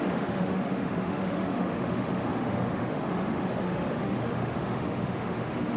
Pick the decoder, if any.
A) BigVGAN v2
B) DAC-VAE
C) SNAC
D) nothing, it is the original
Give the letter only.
B